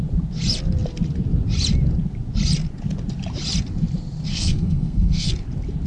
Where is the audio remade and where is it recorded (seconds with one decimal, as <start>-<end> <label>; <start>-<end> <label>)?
0.0-4.3 recorded; 4.3-5.3 remade; 5.3-5.9 recorded